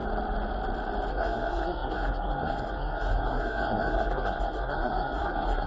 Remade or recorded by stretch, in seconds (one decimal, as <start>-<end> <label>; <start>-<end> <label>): 0.0-1.1 recorded; 1.1-5.7 remade